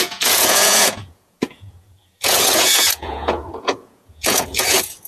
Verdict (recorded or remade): remade